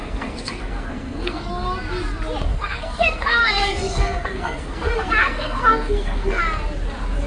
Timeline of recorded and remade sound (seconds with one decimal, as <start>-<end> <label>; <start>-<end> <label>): 0.0-1.5 remade; 1.5-2.5 recorded; 2.5-6.4 remade; 6.4-7.3 recorded